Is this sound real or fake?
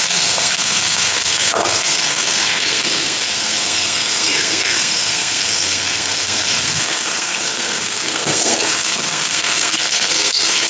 fake